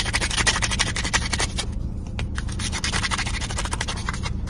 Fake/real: real